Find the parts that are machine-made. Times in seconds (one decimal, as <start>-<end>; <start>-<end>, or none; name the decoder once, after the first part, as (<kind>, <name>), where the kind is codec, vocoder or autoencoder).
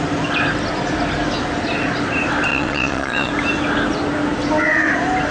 2.5-3.3 (vocoder, Vocos)